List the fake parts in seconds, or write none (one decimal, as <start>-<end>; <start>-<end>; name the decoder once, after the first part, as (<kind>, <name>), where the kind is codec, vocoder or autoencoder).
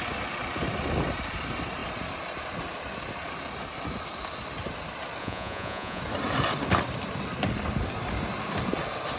5.2-6.0 (vocoder, Vocos)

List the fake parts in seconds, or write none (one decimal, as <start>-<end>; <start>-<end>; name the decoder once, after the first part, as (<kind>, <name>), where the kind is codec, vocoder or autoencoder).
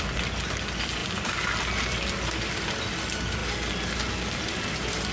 none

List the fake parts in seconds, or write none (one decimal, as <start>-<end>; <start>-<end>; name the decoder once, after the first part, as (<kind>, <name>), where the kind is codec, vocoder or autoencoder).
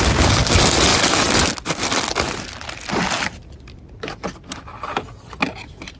none